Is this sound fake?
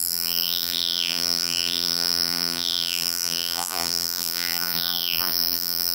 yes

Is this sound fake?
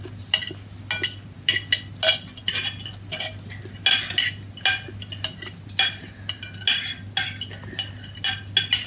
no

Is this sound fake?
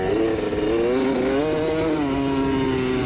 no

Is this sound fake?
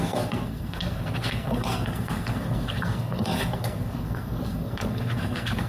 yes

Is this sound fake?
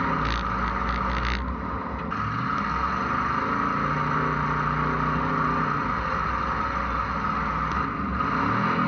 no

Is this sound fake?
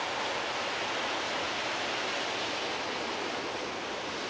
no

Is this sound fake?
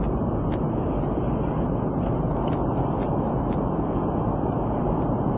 no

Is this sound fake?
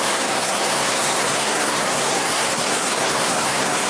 yes